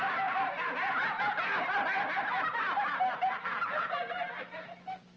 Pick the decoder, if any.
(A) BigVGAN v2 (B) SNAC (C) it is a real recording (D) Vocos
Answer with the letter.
C